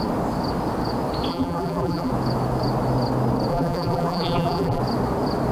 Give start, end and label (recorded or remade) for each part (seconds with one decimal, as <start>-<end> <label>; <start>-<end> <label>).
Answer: 0.0-1.3 recorded; 1.3-2.1 remade; 2.1-3.5 recorded; 3.5-4.8 remade; 4.8-5.5 recorded